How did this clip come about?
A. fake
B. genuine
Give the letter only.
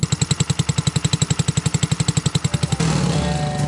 B